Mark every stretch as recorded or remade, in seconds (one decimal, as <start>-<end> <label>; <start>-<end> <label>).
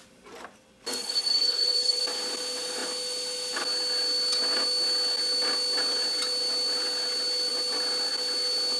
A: 0.0-1.0 recorded; 1.0-2.0 remade; 2.0-8.8 recorded